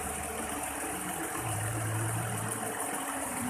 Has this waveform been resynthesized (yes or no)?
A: yes